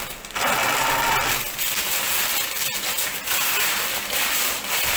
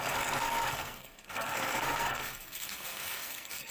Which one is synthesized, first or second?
second